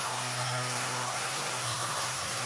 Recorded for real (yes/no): no